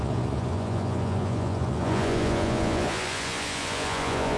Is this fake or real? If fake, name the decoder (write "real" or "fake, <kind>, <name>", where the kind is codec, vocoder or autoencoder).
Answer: fake, vocoder, Vocos